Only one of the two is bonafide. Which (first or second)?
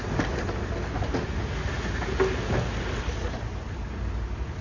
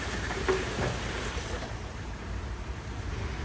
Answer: first